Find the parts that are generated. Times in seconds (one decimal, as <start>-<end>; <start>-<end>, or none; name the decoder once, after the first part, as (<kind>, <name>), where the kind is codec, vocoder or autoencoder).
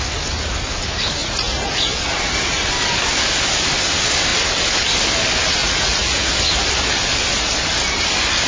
1.2-1.9 (vocoder, Vocos); 5.6-6.3